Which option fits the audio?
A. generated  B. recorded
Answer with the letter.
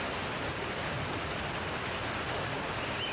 B